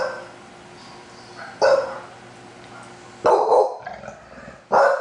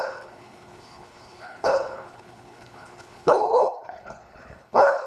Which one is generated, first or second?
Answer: second